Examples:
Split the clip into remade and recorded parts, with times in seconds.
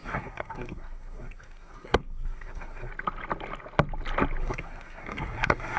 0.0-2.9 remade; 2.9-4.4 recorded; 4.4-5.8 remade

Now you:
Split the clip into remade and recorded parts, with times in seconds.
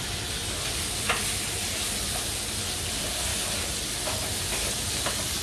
0.0-5.4 recorded